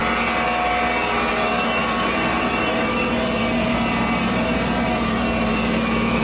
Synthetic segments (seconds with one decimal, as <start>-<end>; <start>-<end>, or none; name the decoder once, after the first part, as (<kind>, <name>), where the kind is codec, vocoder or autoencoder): 1.3-6.2 (vocoder, BigVGAN v2)